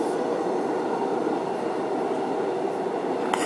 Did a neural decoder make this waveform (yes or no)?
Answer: no